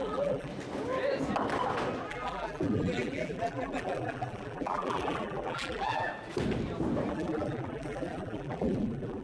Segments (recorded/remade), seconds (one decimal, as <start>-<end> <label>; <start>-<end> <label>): 0.0-0.5 remade; 0.5-2.1 recorded; 2.1-6.1 remade; 6.1-7.1 recorded; 7.1-9.2 remade